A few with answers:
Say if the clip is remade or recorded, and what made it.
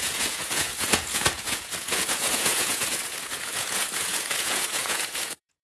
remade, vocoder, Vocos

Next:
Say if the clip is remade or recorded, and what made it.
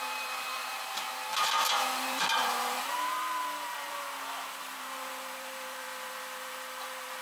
remade, vocoder, BigVGAN v2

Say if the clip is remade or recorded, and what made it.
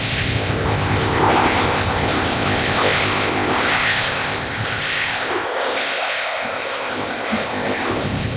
remade, codec, ZipCodec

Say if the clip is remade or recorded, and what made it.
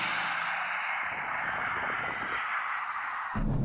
recorded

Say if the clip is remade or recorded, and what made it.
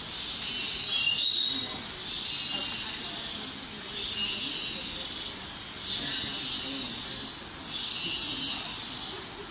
recorded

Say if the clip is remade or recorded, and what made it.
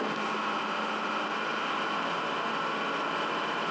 recorded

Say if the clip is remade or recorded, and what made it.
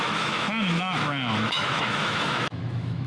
remade, autoencoder, DAC-VAE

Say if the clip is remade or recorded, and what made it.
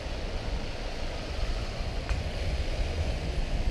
remade, vocoder, Vocos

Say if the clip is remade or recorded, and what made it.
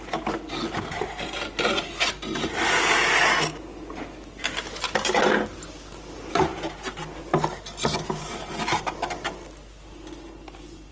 recorded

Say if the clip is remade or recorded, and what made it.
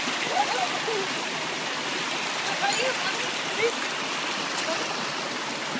recorded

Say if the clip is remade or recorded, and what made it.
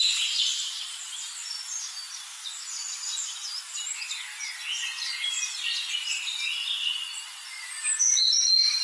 remade, vocoder, BigVGAN v2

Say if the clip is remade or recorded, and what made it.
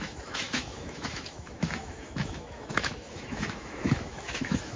remade, autoencoder, DAC-VAE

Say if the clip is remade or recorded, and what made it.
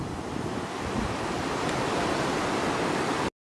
recorded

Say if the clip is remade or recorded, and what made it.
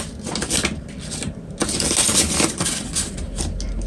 recorded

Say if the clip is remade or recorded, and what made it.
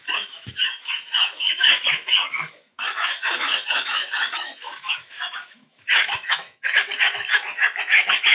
remade, autoencoder, DAC-VAE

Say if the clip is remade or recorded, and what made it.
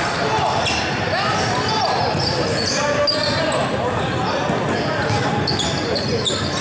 recorded